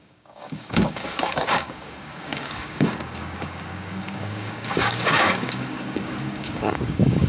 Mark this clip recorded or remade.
remade